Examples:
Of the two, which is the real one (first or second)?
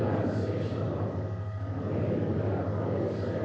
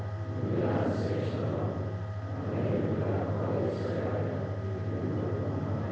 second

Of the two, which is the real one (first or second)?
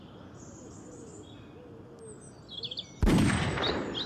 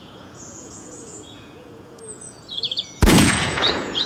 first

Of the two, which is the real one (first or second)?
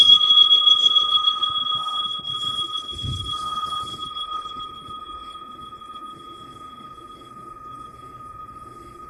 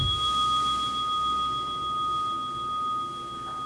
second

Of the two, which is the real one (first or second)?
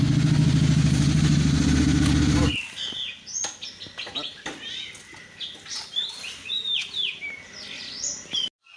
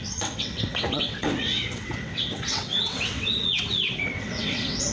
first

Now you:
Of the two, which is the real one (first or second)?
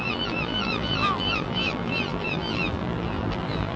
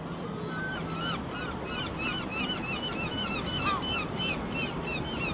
second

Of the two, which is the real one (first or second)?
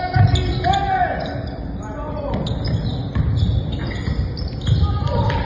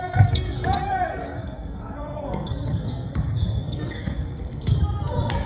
first